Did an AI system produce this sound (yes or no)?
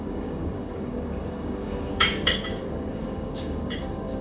yes